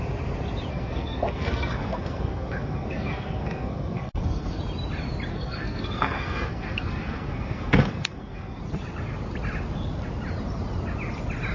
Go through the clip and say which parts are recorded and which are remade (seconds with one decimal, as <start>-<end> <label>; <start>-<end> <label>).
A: 0.0-0.7 recorded; 0.7-4.6 remade; 4.6-5.3 recorded; 5.3-8.6 remade; 8.6-11.5 recorded